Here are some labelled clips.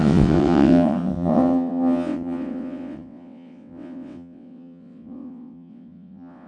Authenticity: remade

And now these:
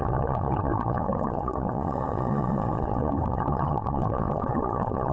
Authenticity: remade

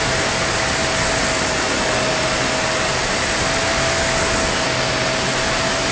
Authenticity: recorded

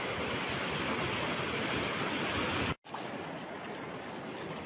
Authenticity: recorded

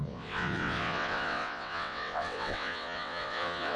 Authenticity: remade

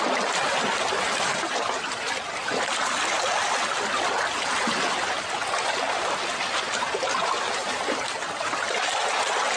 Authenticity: recorded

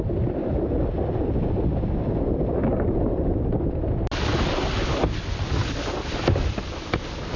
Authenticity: recorded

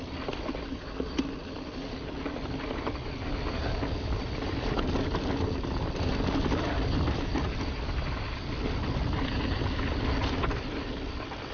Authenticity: recorded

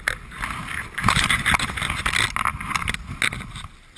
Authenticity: recorded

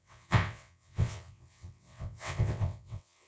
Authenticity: remade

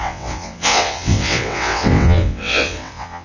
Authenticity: remade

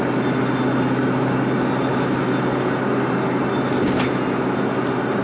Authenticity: recorded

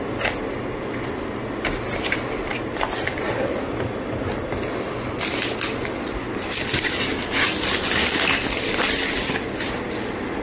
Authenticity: recorded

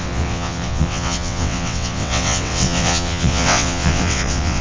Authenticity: remade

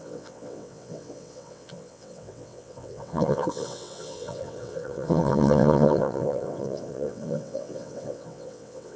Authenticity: remade